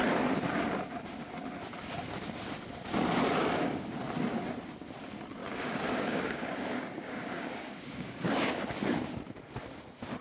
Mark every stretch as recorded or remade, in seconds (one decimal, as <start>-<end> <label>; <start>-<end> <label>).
0.0-5.4 recorded; 5.4-8.5 remade; 8.5-10.2 recorded